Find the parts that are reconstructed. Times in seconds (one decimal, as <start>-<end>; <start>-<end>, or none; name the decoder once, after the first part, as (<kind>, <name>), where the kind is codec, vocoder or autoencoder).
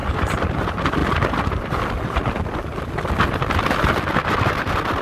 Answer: 0.0-0.6 (vocoder, BigVGAN v2)